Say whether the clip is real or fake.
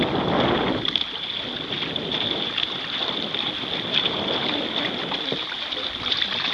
real